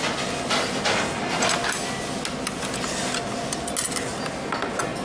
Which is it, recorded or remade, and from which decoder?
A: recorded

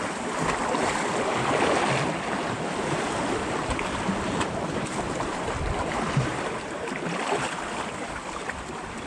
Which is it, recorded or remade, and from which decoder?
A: recorded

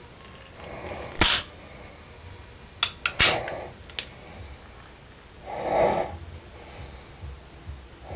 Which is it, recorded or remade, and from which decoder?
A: recorded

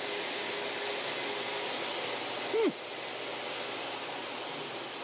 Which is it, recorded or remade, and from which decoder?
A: recorded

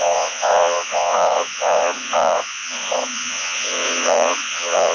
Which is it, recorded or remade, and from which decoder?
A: remade, vocoder, Vocos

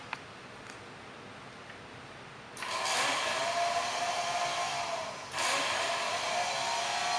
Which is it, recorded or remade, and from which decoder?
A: recorded